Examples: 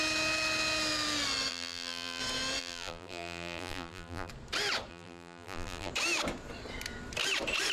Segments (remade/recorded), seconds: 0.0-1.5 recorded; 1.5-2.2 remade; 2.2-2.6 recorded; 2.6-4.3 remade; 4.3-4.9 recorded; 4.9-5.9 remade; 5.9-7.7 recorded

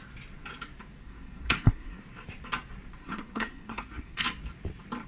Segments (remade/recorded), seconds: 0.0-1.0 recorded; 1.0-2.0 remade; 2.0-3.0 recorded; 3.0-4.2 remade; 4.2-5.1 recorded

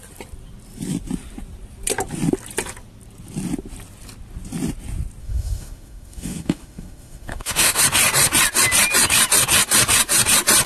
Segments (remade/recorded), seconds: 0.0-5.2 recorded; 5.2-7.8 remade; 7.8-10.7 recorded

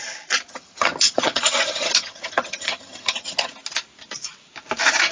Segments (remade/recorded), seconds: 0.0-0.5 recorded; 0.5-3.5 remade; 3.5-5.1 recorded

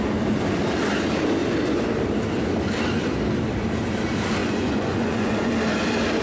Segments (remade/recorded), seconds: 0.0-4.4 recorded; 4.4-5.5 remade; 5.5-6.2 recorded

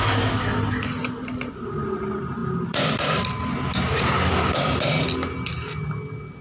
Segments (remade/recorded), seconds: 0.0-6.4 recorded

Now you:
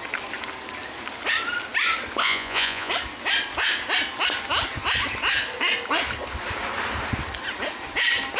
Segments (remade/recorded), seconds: 0.0-2.2 recorded; 2.2-2.9 remade; 2.9-8.4 recorded